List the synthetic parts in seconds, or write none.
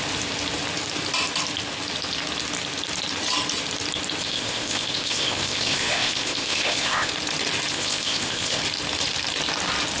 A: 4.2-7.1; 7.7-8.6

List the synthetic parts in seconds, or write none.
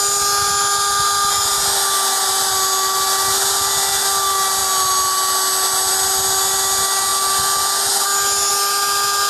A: none